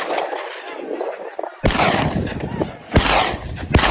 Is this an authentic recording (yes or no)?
no